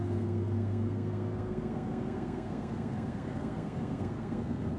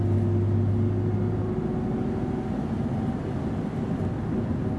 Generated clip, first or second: first